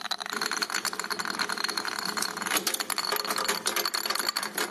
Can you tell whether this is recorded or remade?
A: recorded